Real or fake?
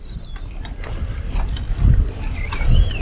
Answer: real